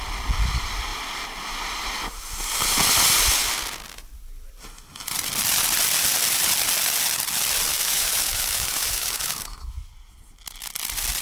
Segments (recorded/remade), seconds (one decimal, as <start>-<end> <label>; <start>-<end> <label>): 0.0-7.7 recorded; 7.7-9.9 remade; 9.9-11.2 recorded